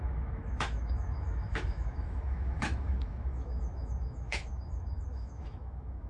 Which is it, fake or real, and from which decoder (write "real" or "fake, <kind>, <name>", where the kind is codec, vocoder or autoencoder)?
fake, autoencoder, DAC-VAE